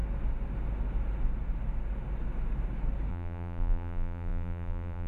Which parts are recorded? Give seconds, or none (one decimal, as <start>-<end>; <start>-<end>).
0.0-3.1